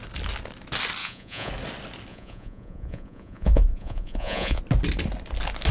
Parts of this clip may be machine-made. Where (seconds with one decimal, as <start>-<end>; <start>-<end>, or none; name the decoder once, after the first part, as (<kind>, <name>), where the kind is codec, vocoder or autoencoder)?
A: 1.0-1.5 (vocoder, Vocos); 2.1-4.6